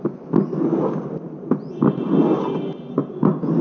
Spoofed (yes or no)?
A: no